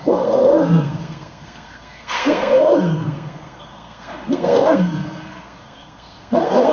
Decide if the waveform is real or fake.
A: fake